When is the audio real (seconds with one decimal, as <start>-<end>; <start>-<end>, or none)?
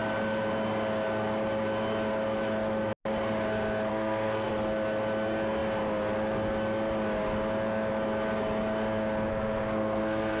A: 0.0-3.9; 4.5-9.3